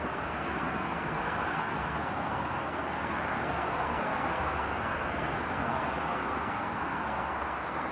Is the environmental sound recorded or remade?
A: remade